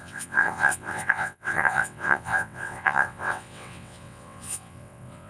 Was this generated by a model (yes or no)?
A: yes